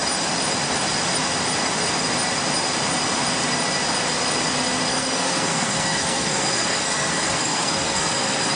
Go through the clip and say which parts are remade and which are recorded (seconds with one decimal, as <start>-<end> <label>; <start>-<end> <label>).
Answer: 0.0-4.9 recorded; 4.9-8.6 remade